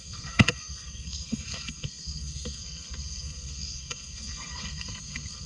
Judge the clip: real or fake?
fake